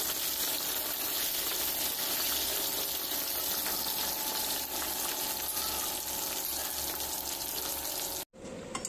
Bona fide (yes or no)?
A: yes